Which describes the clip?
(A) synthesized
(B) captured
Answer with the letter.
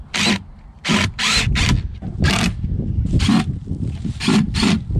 B